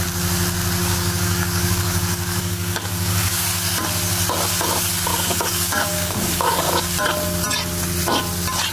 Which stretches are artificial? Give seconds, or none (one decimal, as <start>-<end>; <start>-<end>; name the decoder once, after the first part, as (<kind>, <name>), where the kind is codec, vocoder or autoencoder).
0.8-3.4 (codec, DAC); 5.1-6.9